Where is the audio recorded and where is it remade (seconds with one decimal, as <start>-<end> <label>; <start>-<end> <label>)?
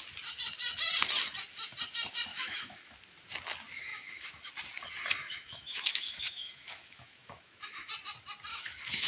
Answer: 0.0-2.3 recorded; 2.3-2.9 remade; 2.9-3.9 recorded; 3.9-4.5 remade; 4.5-5.2 recorded; 5.2-7.9 remade; 7.9-8.5 recorded; 8.5-9.1 remade